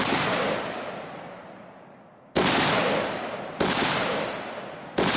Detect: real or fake real